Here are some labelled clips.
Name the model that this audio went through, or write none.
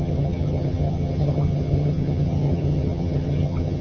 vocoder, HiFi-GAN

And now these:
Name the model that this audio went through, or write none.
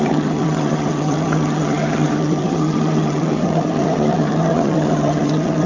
vocoder, HiFi-GAN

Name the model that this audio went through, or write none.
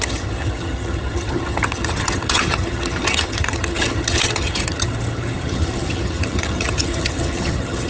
vocoder, HiFi-GAN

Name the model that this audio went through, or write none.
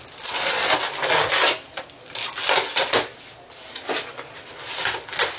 none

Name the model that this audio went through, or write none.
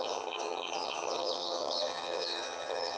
vocoder, HiFi-GAN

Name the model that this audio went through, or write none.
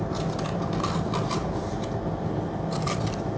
none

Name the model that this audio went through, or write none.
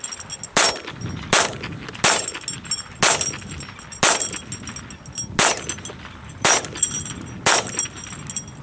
none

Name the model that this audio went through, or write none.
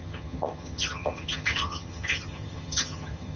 vocoder, HiFi-GAN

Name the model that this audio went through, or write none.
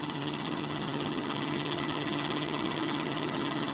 vocoder, HiFi-GAN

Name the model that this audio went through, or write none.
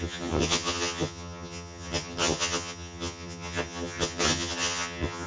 vocoder, HiFi-GAN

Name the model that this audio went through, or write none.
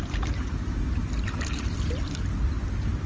none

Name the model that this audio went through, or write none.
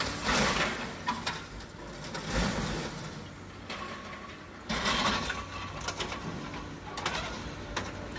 none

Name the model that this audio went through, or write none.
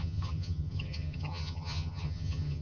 vocoder, HiFi-GAN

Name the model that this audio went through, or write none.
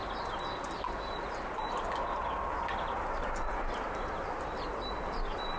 none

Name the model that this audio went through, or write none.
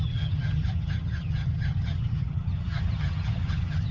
vocoder, HiFi-GAN